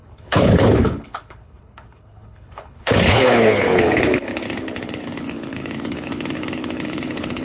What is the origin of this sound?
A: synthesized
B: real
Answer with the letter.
A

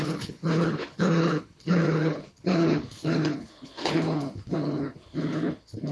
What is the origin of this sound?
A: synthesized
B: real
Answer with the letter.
A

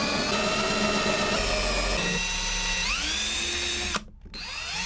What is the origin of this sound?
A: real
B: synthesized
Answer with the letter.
A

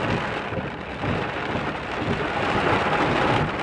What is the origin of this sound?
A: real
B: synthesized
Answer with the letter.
A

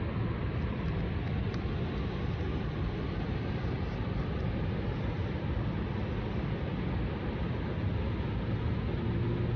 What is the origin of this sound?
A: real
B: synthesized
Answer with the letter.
A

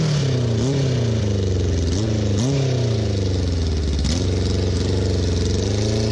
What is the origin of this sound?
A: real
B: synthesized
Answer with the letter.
A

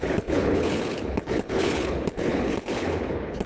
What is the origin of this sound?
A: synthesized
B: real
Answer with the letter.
A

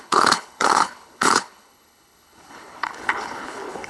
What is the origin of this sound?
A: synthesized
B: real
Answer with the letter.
A